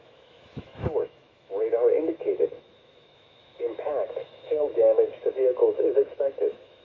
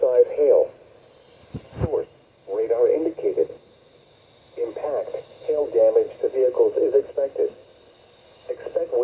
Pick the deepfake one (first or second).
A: first